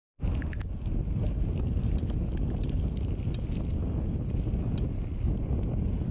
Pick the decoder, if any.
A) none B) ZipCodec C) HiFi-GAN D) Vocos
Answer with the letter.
A